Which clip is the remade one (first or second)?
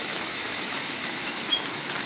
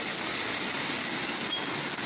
first